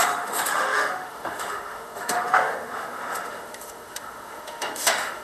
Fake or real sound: fake